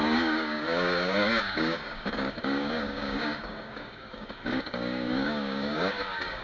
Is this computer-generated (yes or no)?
yes